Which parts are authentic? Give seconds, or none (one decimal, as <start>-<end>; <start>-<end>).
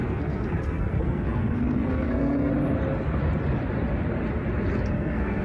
2.5-4.9